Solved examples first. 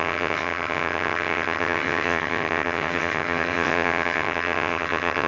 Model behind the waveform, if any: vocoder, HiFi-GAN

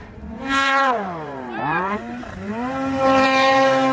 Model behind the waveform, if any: vocoder, BigVGAN v2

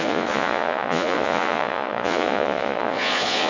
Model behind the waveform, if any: vocoder, Vocos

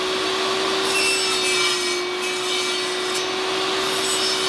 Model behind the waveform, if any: none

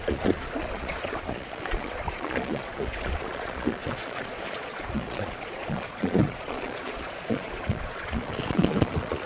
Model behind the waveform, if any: vocoder, Vocos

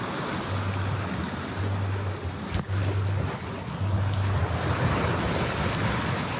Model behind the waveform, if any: none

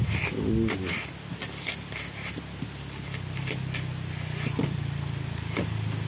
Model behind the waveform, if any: none